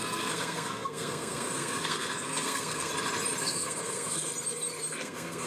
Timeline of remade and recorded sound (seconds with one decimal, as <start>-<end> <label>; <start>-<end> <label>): 0.0-2.9 remade; 2.9-3.4 recorded; 3.4-4.3 remade; 4.3-4.9 recorded; 4.9-5.5 remade